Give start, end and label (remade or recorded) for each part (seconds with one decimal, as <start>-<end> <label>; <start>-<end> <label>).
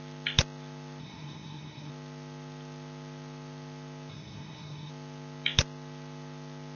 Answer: 0.0-1.0 recorded; 1.0-1.9 remade; 1.9-4.1 recorded; 4.1-4.9 remade; 4.9-6.8 recorded